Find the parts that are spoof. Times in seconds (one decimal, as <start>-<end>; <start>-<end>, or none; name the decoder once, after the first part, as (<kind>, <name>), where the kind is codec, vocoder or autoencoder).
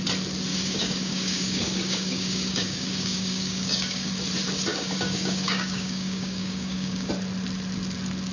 0.5-4.1 (codec, DAC); 4.7-7.1